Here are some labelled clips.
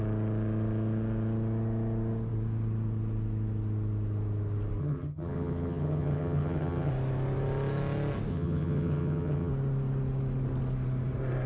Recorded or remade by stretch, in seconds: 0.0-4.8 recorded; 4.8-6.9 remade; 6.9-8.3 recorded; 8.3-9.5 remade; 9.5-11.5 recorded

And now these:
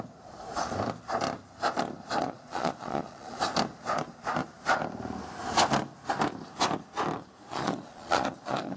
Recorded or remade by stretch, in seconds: 0.0-2.2 recorded; 2.2-3.4 remade; 3.4-7.4 recorded; 7.4-8.8 remade

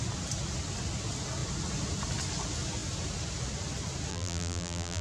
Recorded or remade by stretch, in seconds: 0.0-4.1 recorded; 4.1-5.0 remade